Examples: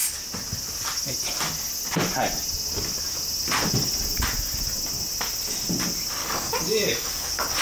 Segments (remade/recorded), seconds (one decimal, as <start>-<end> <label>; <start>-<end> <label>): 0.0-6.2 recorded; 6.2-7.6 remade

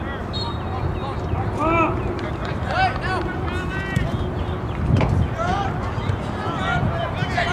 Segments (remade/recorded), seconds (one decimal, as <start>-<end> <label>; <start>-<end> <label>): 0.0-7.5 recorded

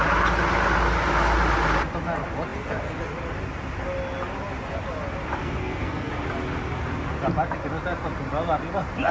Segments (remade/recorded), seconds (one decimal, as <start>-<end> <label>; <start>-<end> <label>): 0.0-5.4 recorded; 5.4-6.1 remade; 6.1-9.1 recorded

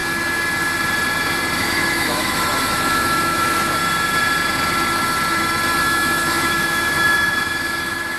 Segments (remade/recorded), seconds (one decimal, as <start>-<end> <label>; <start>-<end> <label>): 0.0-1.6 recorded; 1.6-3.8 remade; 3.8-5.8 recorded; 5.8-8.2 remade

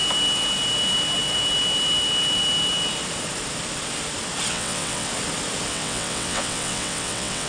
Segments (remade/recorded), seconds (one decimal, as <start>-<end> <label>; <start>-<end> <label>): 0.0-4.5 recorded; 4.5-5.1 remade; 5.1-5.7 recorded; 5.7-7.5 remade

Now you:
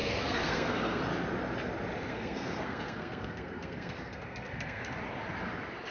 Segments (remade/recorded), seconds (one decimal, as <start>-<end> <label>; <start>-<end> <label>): 0.0-1.0 remade; 1.0-2.1 recorded; 2.1-4.8 remade; 4.8-5.9 recorded